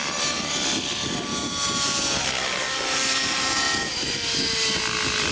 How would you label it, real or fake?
real